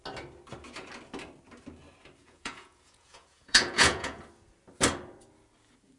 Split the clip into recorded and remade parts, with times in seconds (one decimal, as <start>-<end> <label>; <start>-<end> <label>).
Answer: 0.0-2.2 recorded; 2.2-4.2 remade; 4.2-6.0 recorded